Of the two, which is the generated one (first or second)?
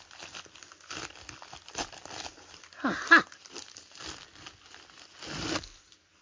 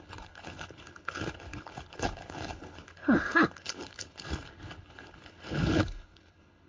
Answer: second